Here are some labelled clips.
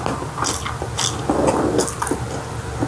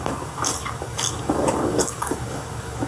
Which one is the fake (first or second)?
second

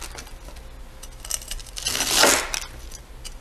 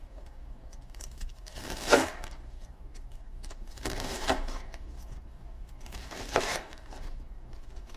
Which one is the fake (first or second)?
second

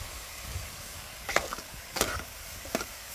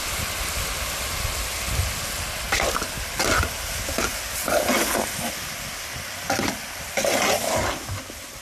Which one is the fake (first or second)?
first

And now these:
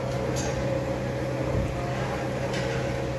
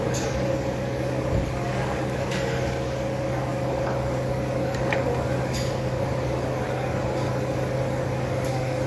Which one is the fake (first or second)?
second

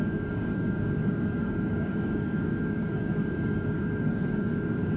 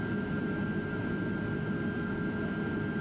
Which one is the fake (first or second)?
first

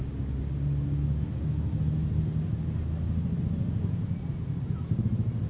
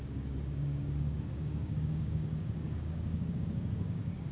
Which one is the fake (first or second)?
second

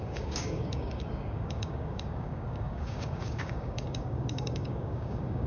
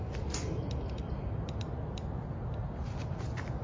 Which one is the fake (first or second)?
first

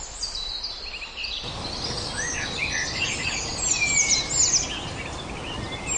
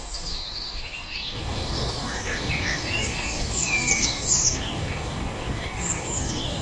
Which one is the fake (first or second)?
second